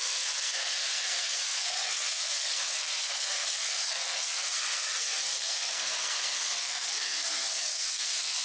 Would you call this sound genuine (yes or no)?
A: no